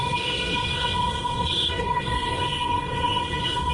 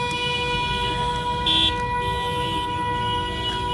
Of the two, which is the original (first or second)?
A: second